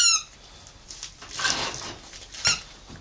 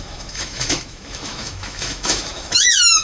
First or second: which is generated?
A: second